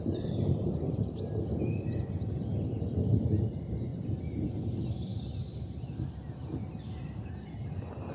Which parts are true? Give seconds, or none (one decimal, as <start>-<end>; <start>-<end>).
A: 5.1-6.3